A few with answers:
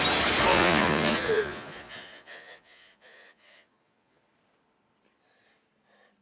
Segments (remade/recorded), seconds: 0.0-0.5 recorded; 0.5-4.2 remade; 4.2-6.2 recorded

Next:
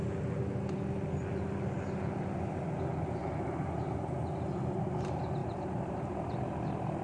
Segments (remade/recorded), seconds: 0.0-3.2 recorded; 3.2-4.1 remade; 4.1-5.4 recorded; 5.4-6.3 remade; 6.3-7.0 recorded

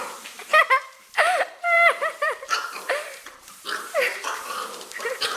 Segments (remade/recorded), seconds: 0.0-5.4 remade

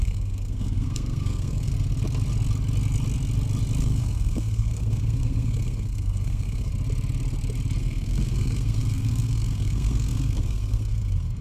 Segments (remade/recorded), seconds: 0.0-1.7 remade; 1.7-3.8 recorded; 3.8-6.7 remade; 6.7-7.8 recorded; 7.8-11.4 remade